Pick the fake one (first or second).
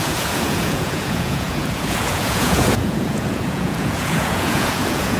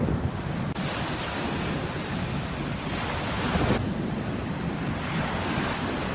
first